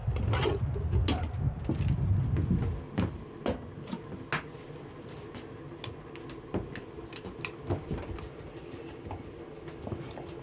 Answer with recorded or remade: recorded